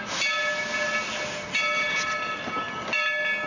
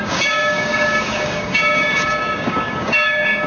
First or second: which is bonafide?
first